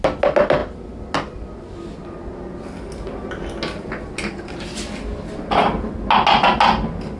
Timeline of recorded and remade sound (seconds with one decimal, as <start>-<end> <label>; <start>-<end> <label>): 0.0-7.2 recorded